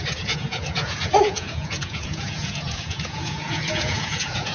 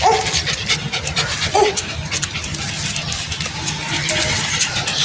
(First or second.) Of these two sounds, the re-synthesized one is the first